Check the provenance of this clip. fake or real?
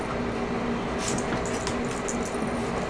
real